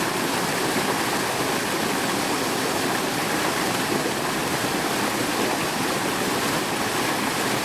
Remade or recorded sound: recorded